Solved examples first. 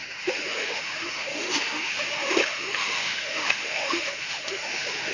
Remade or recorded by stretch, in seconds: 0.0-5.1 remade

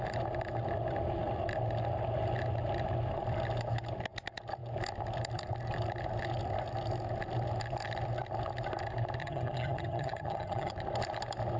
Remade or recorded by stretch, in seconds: 0.0-9.2 recorded; 9.2-10.7 remade; 10.7-11.6 recorded

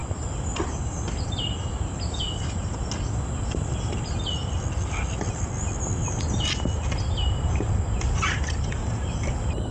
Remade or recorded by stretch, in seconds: 0.0-2.2 remade; 2.2-9.7 recorded

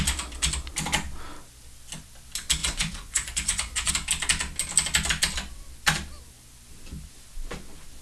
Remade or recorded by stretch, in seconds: 0.0-2.6 recorded; 2.6-3.9 remade; 3.9-8.0 recorded